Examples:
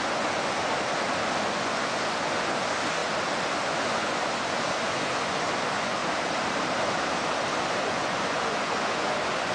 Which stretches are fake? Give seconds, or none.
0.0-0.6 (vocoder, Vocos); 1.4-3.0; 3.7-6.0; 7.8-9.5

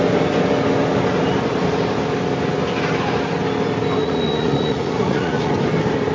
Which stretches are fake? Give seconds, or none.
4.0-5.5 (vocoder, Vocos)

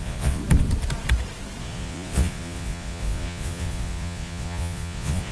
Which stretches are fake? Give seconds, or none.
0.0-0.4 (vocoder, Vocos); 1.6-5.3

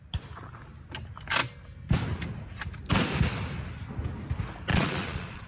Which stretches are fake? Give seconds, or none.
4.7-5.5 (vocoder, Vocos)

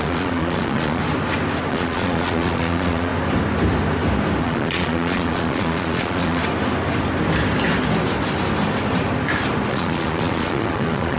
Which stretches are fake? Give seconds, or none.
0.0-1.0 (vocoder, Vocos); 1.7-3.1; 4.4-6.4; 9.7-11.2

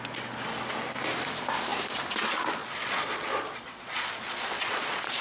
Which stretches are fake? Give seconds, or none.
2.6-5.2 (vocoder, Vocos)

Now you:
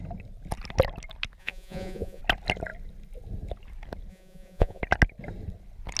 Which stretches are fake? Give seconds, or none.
1.4-2.2 (vocoder, Vocos); 4.1-4.8

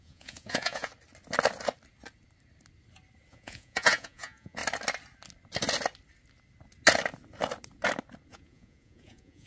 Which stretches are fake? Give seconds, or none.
0.0-0.9 (vocoder, Vocos); 3.3-4.6; 8.3-9.5